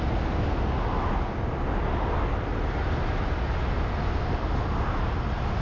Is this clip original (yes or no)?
yes